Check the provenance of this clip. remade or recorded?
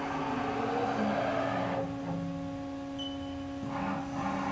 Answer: recorded